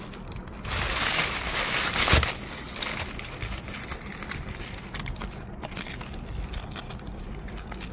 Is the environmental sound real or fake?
real